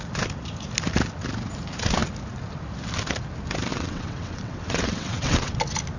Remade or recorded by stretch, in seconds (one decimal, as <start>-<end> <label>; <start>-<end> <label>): 0.0-3.7 recorded; 3.7-5.6 remade; 5.6-6.0 recorded